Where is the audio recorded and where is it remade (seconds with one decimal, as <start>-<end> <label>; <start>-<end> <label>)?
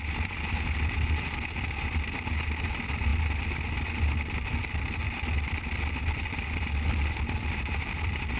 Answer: 0.0-8.4 recorded